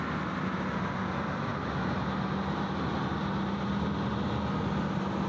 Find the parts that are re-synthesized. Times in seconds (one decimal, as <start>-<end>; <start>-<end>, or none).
none